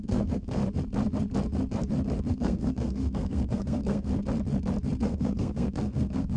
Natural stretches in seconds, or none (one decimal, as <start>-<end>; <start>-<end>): 0.6-2.3; 4.1-5.0